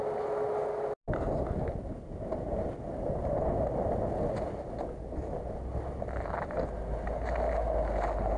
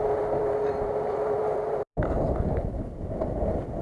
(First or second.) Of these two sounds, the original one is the first